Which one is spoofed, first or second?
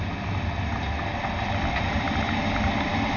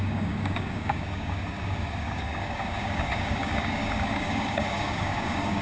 second